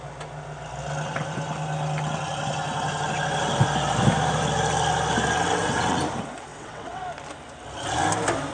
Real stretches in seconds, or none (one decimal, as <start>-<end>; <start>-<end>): 0.0-5.4; 6.0-6.5; 7.0-8.5